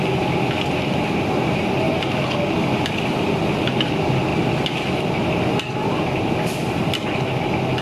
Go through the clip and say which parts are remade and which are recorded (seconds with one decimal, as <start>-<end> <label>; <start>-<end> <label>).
0.0-7.8 recorded